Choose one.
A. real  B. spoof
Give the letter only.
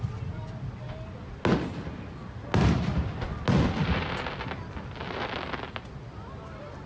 A